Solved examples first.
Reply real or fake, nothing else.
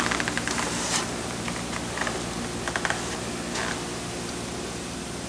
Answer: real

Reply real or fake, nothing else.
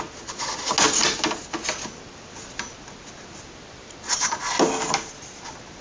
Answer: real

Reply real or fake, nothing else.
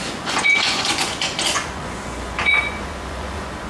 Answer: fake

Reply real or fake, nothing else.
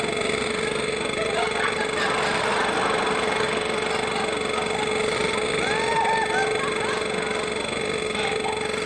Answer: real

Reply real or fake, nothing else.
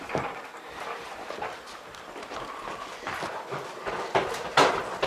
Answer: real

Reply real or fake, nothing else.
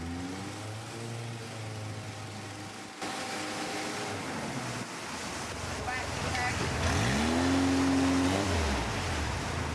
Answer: real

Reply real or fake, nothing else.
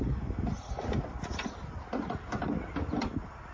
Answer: real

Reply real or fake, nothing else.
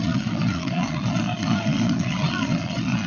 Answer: fake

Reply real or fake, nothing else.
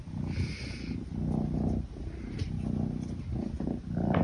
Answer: real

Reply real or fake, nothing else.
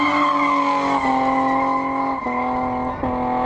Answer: real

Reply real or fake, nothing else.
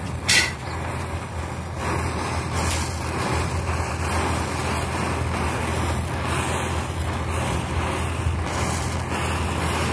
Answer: real